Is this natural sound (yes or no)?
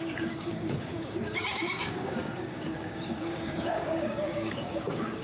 no